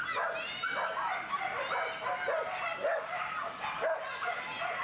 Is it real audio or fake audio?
real